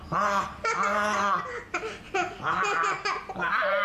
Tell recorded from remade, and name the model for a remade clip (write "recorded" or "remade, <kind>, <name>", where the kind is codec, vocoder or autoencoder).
recorded